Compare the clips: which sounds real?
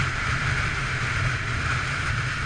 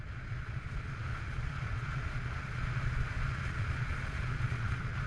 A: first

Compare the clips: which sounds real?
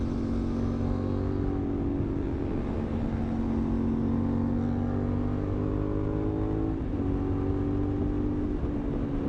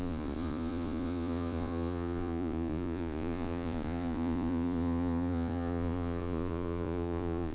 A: first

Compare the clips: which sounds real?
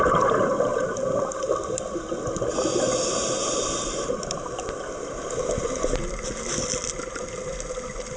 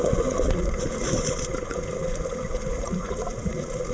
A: first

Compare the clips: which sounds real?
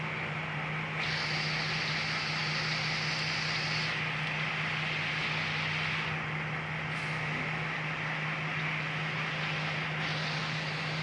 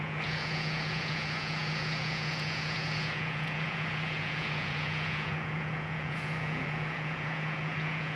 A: first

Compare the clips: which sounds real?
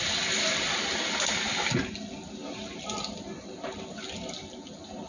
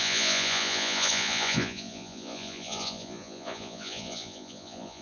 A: first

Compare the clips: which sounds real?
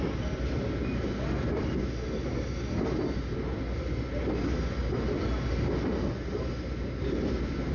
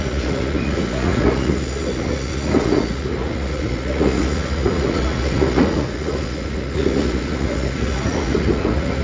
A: first